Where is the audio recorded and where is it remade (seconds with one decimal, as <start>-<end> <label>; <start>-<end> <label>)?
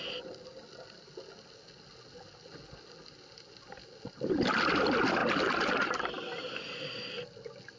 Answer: 0.0-7.8 recorded